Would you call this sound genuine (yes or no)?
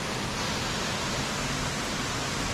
yes